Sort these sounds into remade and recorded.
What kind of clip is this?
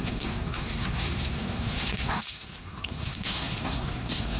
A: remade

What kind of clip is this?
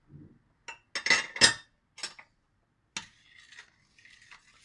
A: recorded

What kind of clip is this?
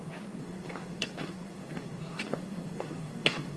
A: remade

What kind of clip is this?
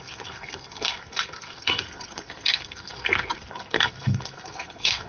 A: remade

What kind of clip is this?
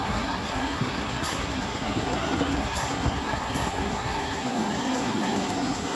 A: remade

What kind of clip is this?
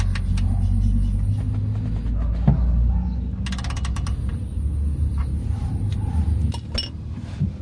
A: recorded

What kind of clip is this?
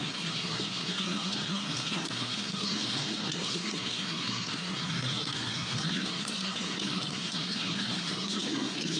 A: remade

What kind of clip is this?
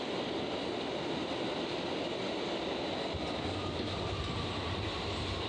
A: recorded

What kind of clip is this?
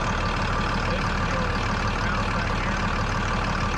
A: recorded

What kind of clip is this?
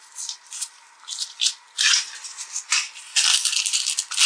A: recorded